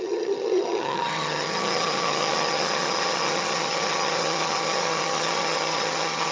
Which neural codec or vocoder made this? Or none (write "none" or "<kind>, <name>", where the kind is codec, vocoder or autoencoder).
vocoder, HiFi-GAN